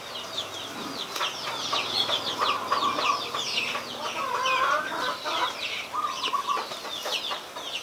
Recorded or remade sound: recorded